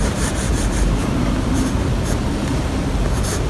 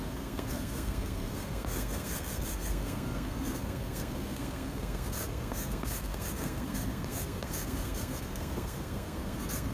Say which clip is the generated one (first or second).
second